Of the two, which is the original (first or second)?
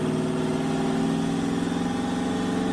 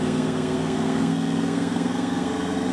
first